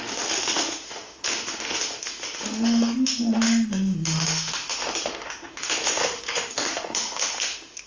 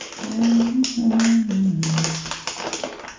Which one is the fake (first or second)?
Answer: first